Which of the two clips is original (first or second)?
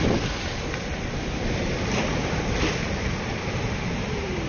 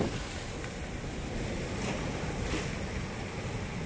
second